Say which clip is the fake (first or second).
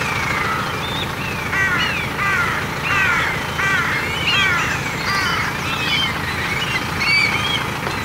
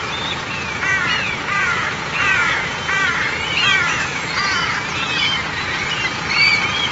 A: second